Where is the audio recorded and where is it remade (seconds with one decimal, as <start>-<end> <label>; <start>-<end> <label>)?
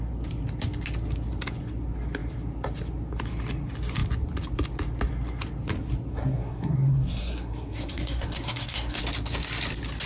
0.0-6.1 recorded; 6.1-9.0 remade; 9.0-10.1 recorded